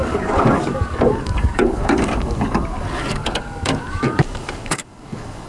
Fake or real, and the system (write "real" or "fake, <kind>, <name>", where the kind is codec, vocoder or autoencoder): fake, codec, DAC